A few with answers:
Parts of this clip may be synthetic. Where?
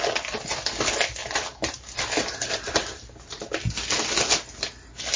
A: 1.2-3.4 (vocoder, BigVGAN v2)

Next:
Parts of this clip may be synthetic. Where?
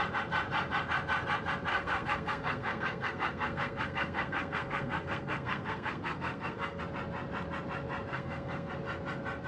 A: 1.7-6.8 (codec, SNAC); 8.1-8.7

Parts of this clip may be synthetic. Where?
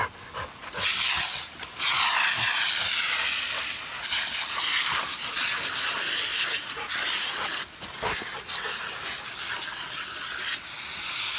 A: none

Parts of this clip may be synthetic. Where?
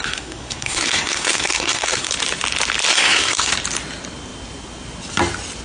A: 0.0-2.1 (codec, SNAC); 2.9-3.5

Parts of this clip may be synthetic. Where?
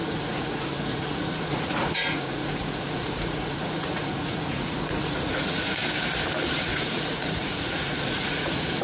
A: 0.0-5.8 (vocoder, Vocos); 6.5-8.8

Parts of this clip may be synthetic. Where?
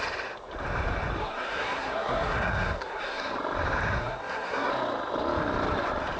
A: 1.2-3.3 (codec, SNAC); 4.0-4.7